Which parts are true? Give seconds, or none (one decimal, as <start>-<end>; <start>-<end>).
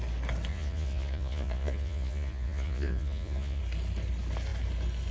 0.0-0.5; 3.6-5.1